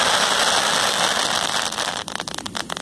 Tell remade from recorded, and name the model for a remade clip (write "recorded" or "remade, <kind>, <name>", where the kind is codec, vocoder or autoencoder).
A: recorded